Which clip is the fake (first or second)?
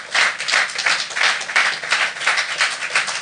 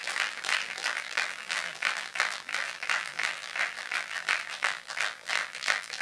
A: second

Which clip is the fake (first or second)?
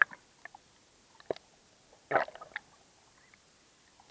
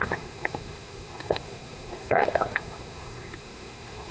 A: second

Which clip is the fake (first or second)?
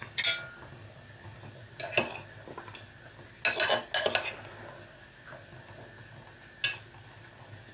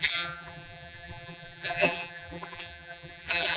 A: second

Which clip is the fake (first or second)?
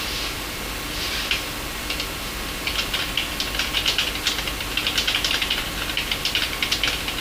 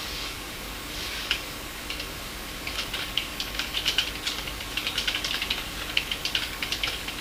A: second